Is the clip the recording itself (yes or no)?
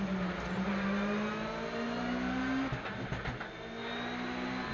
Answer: yes